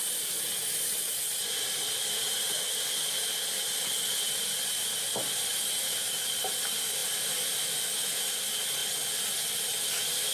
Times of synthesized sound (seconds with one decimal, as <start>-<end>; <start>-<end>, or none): none